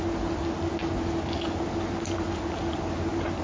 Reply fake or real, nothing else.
real